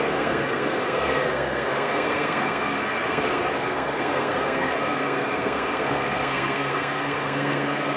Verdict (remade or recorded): remade